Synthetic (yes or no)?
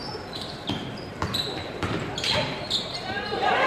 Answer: yes